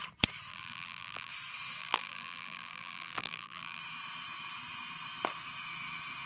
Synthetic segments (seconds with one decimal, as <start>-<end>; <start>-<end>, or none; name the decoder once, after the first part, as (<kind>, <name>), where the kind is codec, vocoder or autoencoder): 0.5-1.3 (vocoder, BigVGAN v2); 1.8-3.8